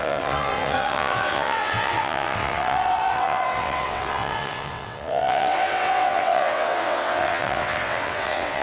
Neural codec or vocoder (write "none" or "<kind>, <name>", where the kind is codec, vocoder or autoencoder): vocoder, WaveNeXt